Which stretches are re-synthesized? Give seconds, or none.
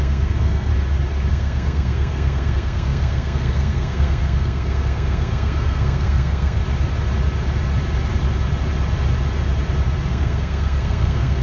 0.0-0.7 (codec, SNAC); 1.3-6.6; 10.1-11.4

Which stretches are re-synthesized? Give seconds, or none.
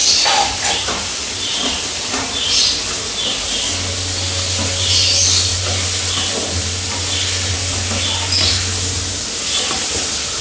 0.0-0.7 (vocoder, BigVGAN v2); 1.1-2.6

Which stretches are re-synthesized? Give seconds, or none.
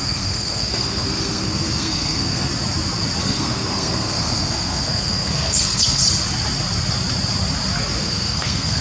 0.0-2.5 (codec, SNAC); 3.2-6.0; 8.0-8.8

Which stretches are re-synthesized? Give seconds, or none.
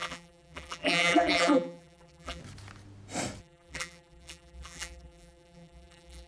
0.0-2.4 (vocoder, BigVGAN v2); 3.4-6.3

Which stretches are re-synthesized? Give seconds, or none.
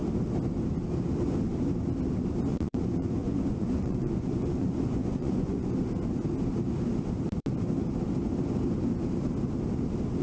2.5-5.9 (vocoder, Vocos)